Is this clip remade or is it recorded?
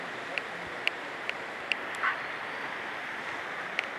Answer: recorded